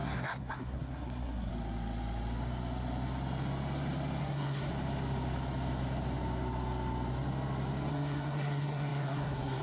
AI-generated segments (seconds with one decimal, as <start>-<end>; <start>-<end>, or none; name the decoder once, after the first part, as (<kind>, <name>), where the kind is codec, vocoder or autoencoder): 0.0-1.5 (codec, SNAC); 4.2-4.7; 7.9-9.6